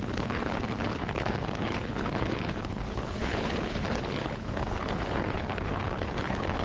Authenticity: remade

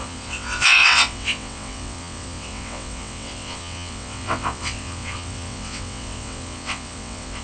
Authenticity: remade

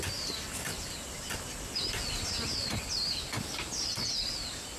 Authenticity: recorded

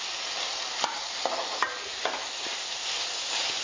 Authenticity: recorded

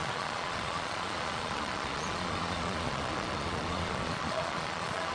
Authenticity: remade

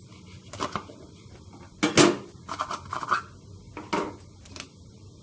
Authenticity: recorded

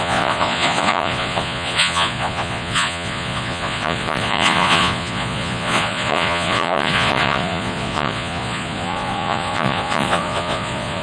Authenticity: remade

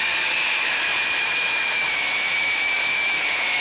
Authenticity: remade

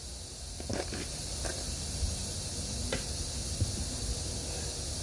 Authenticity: recorded